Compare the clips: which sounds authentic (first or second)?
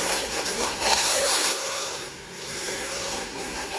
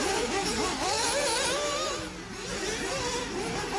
second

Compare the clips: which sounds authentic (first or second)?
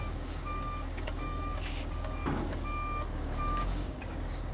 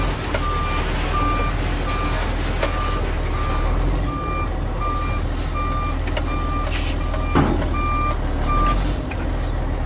second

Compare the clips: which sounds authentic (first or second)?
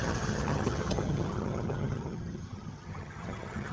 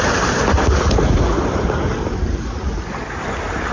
second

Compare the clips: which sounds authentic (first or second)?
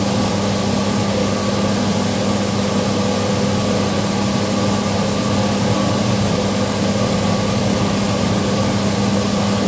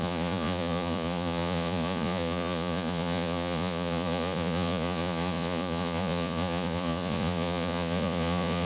first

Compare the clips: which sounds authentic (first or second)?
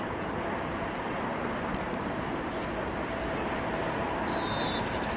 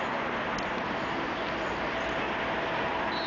second